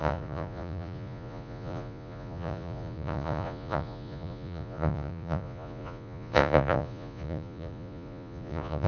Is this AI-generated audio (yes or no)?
yes